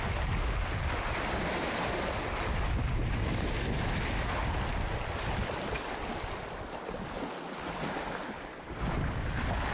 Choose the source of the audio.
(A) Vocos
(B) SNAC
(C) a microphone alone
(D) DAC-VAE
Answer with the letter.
C